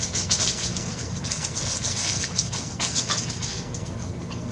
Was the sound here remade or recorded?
remade